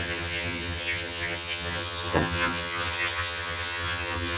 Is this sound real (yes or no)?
no